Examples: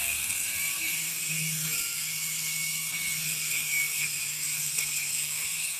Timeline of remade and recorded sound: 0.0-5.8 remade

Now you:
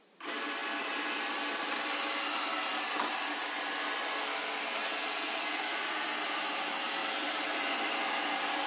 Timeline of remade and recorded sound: 0.0-4.8 recorded; 4.8-5.6 remade; 5.6-7.0 recorded; 7.0-7.6 remade; 7.6-8.7 recorded

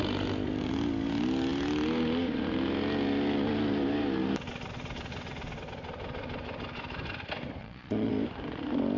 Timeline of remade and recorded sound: 0.0-7.6 recorded; 7.6-8.1 remade; 8.1-9.0 recorded

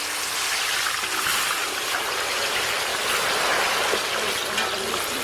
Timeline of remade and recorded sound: 0.0-1.6 recorded; 1.6-2.1 remade; 2.1-5.2 recorded

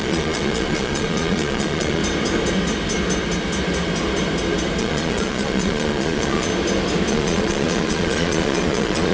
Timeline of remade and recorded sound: 0.0-2.0 remade; 2.0-4.8 recorded; 4.8-6.5 remade; 6.5-7.1 recorded; 7.1-9.1 remade